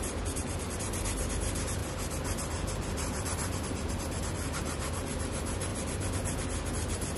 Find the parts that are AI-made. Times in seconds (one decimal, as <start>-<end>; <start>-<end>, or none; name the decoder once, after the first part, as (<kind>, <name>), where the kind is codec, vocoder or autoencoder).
0.0-1.8 (vocoder, BigVGAN v2); 2.5-3.4; 3.9-5.7; 6.7-7.2